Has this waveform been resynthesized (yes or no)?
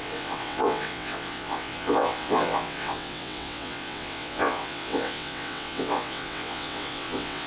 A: yes